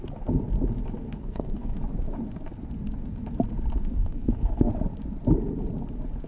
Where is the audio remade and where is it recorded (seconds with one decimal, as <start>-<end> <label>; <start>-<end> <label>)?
0.0-1.0 recorded; 1.0-1.8 remade; 1.8-3.8 recorded; 3.8-4.7 remade; 4.7-6.3 recorded